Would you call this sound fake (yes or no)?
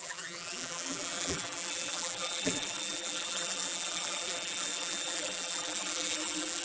yes